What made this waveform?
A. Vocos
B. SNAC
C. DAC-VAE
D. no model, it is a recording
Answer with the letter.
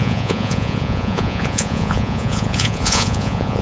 A